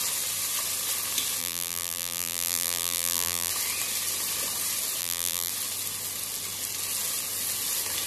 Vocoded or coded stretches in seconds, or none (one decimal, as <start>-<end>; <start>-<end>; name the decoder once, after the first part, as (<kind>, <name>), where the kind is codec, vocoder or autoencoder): 1.4-3.5 (vocoder, BigVGAN v2); 5.0-5.5